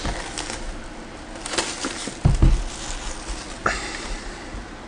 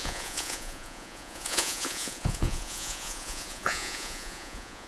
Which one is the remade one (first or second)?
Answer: second